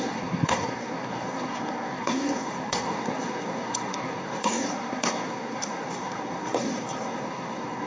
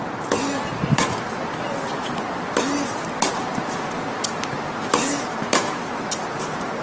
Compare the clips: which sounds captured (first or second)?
second